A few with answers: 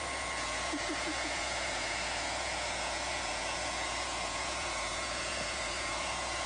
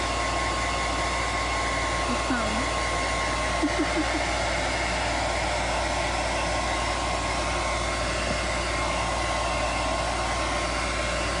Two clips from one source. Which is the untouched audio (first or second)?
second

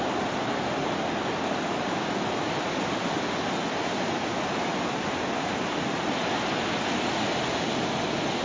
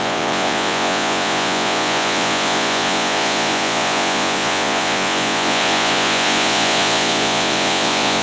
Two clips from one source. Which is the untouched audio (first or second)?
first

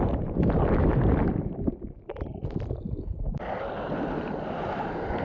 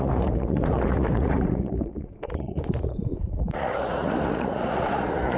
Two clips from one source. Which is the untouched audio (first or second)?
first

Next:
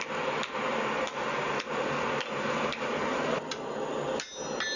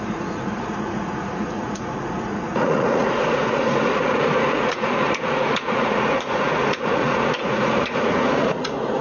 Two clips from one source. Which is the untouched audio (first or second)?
first